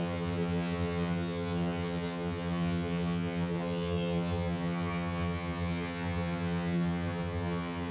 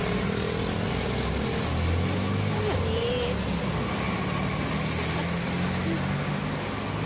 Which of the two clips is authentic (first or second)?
second